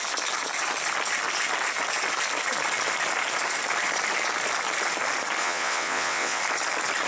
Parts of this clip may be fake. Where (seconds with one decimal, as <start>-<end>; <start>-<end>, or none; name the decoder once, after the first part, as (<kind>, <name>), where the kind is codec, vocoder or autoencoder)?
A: 5.4-6.4 (vocoder, WaveNeXt)